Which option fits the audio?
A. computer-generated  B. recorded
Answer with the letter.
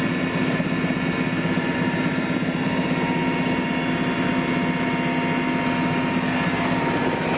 B